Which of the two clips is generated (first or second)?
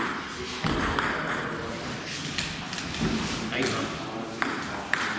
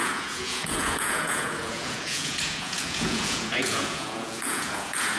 second